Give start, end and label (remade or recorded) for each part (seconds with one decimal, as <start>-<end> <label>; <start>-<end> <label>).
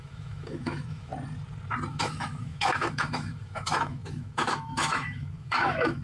0.0-1.1 remade; 1.1-1.9 recorded; 1.9-6.0 remade